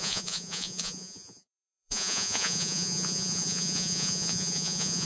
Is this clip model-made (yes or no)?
yes